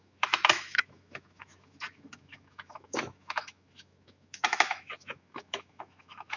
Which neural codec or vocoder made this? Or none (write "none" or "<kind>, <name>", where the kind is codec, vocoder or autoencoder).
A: autoencoder, DAC-VAE